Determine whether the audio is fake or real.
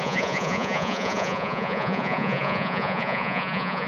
fake